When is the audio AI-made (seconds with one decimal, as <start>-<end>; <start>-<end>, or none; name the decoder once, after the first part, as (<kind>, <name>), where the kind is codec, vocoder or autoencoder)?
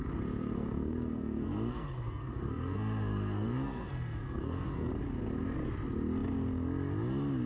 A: 0.4-4.9 (codec, SNAC)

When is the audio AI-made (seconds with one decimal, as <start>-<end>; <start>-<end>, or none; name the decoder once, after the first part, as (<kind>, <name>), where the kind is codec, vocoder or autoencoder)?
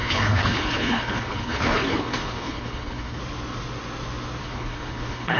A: 0.0-3.2 (codec, HILCodec); 4.4-5.4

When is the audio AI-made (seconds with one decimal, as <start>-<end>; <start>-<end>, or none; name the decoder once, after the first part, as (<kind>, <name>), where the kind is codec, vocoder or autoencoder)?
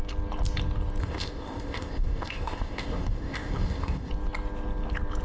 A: 1.0-4.1 (codec, ZipCodec)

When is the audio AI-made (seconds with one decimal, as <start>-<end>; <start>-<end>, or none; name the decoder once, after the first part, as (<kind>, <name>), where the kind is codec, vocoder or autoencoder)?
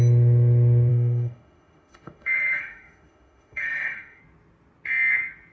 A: 0.9-4.2 (autoencoder, DAC-VAE)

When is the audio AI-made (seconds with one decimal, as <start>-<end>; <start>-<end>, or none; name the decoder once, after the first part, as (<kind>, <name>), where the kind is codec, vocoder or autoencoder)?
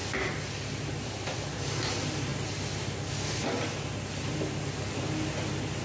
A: none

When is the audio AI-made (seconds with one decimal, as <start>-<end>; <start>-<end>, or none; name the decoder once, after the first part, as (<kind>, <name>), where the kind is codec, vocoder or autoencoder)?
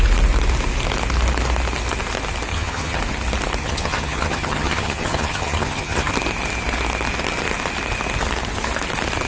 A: 2.5-3.0 (vocoder, HiFi-GAN); 3.6-6.1